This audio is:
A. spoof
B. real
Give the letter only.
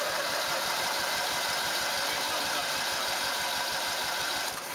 A